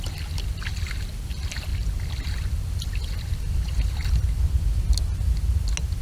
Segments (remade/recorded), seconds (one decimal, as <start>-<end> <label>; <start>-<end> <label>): 0.0-6.0 recorded